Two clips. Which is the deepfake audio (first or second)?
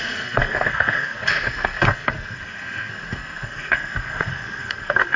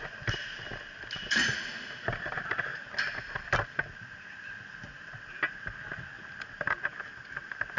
first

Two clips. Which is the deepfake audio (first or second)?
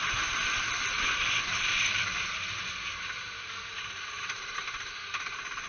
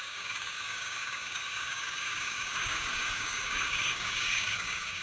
second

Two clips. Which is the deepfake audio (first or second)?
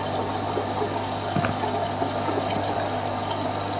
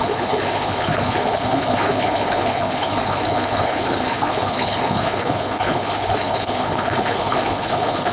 second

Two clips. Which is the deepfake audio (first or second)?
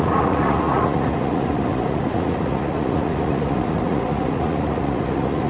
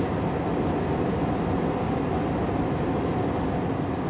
first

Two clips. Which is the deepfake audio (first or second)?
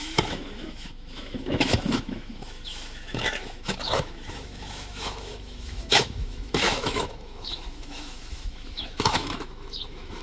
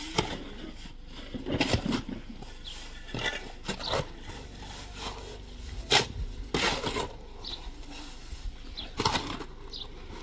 first